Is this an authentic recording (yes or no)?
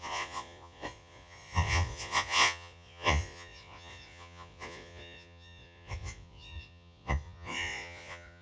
no